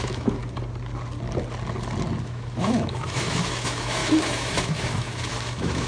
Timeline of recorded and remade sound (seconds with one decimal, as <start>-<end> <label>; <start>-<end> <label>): 0.0-0.4 remade; 0.4-2.2 recorded; 2.2-5.9 remade

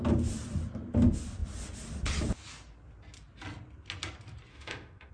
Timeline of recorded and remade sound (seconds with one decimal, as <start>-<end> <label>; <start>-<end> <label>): 0.0-4.5 recorded; 4.5-5.1 remade

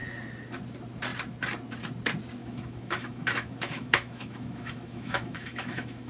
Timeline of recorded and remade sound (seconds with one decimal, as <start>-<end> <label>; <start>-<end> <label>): 0.0-2.4 recorded; 2.4-6.1 remade

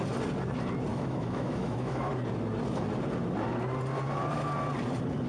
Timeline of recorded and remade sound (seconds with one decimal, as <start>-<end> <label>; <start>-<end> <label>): 0.0-0.9 recorded; 0.9-2.1 remade; 2.1-5.3 recorded

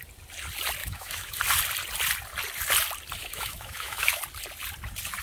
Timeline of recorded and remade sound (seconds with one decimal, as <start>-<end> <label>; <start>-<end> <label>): 0.0-0.8 recorded; 0.8-1.4 remade; 1.4-3.2 recorded; 3.2-4.2 remade; 4.2-5.2 recorded